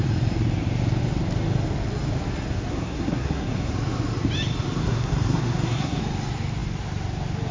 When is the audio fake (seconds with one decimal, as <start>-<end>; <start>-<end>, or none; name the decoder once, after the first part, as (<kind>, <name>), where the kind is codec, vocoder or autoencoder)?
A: 2.7-3.7 (codec, SNAC); 4.8-6.0